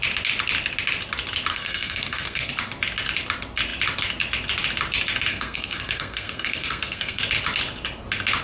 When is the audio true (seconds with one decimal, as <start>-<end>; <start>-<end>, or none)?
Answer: 0.0-1.5; 2.5-5.3; 7.2-8.4